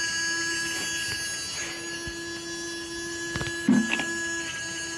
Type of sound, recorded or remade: recorded